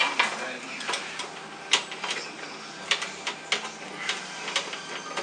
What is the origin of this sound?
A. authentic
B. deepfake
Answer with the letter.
A